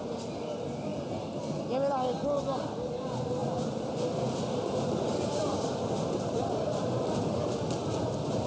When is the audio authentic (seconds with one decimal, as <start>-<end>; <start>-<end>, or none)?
0.0-8.5

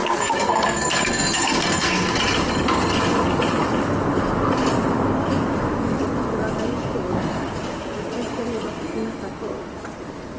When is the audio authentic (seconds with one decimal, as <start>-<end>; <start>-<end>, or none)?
2.2-10.4